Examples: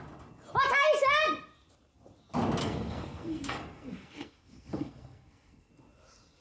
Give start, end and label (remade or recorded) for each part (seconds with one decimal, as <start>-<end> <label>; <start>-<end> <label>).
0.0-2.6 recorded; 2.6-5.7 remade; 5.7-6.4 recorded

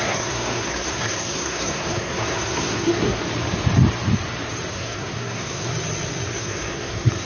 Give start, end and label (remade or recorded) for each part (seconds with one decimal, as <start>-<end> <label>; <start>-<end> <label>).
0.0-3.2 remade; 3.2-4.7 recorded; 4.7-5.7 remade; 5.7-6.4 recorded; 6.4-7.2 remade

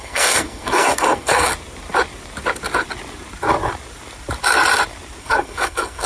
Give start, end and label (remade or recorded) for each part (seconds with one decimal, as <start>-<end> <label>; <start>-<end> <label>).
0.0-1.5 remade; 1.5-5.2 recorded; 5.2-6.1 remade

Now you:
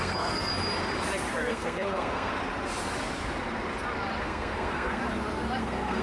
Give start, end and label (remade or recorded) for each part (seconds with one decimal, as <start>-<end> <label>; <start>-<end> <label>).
0.0-0.5 remade; 0.5-1.5 recorded; 1.5-2.3 remade; 2.3-4.2 recorded; 4.2-5.0 remade; 5.0-5.6 recorded; 5.6-6.0 remade